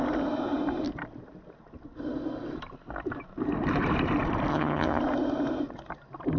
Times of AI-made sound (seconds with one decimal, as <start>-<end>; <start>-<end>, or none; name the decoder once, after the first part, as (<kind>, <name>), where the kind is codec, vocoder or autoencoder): 4.5-5.0 (vocoder, HiFi-GAN)

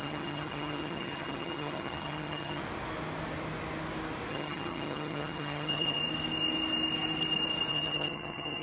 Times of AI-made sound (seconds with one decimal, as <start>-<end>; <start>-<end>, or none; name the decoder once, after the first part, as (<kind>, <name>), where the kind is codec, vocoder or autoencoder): 0.0-2.6 (vocoder, HiFi-GAN); 4.3-6.0; 7.7-8.6

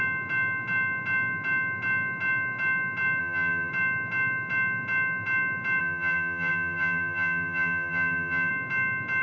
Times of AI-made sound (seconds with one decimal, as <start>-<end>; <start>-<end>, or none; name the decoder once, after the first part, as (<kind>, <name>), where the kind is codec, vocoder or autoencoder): 3.2-3.7 (vocoder, HiFi-GAN); 5.8-8.5

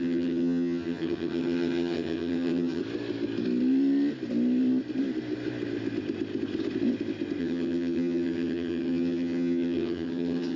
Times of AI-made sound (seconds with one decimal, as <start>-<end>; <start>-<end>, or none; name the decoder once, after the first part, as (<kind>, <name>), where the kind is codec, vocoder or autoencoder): 0.0-2.8 (vocoder, HiFi-GAN); 7.4-10.6

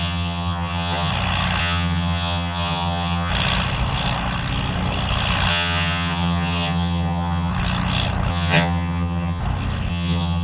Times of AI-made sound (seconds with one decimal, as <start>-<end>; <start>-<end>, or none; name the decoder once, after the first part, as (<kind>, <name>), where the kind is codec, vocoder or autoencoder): 0.0-1.1 (vocoder, HiFi-GAN); 1.6-3.3; 5.5-7.5; 8.3-9.4; 9.9-10.4

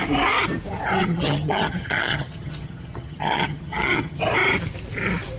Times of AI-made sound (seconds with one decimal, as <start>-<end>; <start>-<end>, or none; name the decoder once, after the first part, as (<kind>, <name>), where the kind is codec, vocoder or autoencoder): 1.0-4.2 (vocoder, HiFi-GAN)